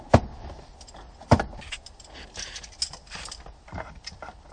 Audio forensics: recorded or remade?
recorded